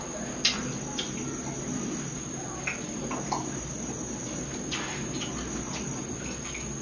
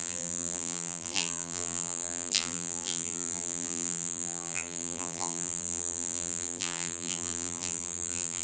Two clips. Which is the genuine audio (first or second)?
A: first